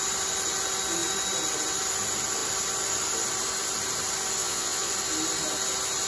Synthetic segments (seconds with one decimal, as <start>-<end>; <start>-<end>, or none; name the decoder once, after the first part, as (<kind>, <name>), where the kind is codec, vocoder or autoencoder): 4.4-4.9 (vocoder, Vocos)